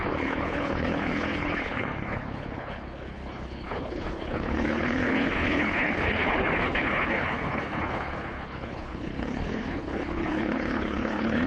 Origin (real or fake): fake